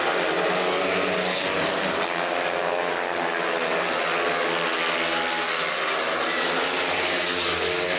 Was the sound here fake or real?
real